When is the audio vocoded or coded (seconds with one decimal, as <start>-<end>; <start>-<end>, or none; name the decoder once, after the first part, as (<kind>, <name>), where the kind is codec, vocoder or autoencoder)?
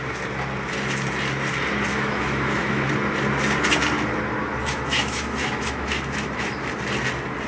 1.9-2.9 (autoencoder, DAC-VAE); 4.6-6.7